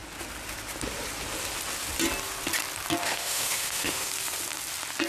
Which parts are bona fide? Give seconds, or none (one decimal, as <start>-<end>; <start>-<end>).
0.0-3.0; 4.1-5.1